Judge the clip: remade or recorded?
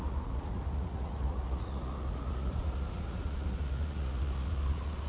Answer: remade